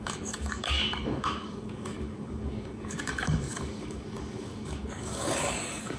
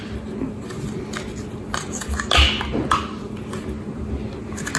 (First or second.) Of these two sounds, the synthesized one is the first